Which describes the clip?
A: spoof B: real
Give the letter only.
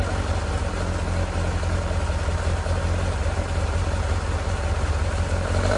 B